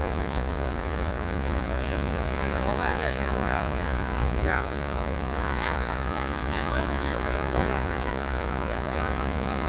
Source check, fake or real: fake